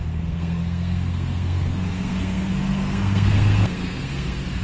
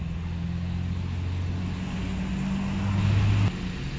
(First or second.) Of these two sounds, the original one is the second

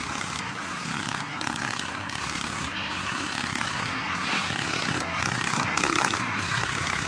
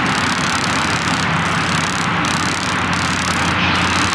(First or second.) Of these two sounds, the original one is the second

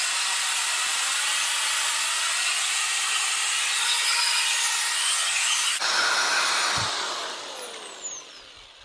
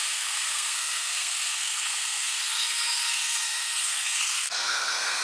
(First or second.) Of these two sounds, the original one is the first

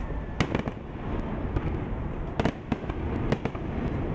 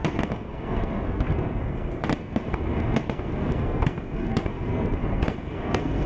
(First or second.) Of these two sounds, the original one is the first